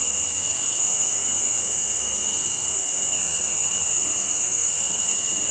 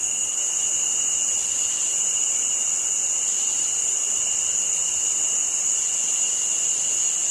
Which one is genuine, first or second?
second